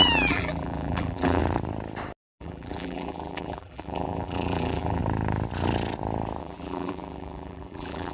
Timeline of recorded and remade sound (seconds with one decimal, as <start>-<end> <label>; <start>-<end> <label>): 0.0-1.4 remade; 1.4-2.4 recorded; 2.4-5.0 remade; 5.0-6.4 recorded; 6.4-8.1 remade